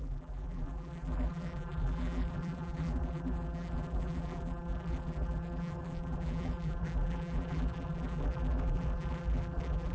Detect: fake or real fake